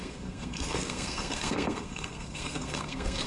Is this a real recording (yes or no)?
no